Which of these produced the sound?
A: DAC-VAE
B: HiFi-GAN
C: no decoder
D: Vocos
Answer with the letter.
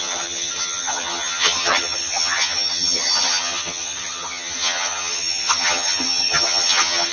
B